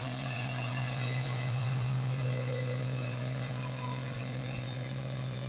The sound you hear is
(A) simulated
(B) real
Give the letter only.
A